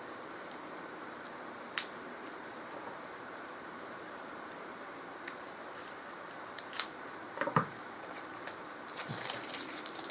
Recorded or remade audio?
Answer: remade